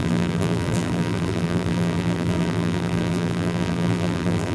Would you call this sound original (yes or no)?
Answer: no